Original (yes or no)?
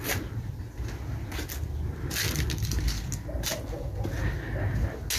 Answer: yes